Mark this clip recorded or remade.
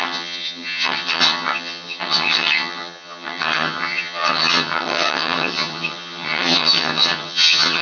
remade